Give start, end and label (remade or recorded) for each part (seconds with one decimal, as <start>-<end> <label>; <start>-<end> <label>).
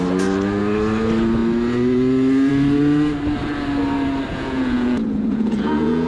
0.0-4.3 recorded; 4.3-6.1 remade